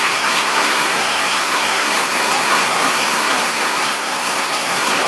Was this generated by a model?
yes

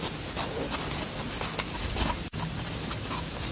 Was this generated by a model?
no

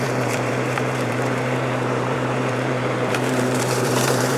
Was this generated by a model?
yes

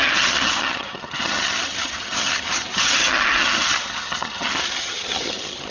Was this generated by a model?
yes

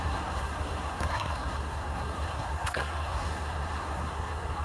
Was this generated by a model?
yes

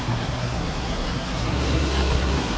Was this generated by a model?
yes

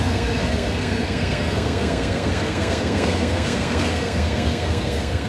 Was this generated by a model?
yes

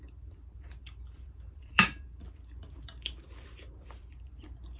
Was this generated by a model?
yes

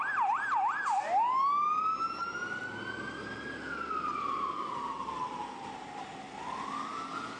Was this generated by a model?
no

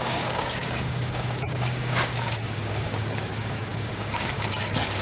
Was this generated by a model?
yes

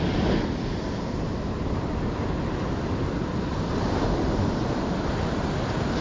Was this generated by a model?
no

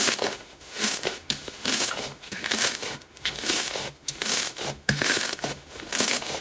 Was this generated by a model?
yes